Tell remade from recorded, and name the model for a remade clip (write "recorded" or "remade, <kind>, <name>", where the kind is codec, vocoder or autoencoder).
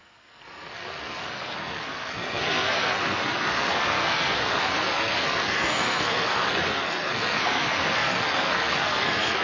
remade, codec, SNAC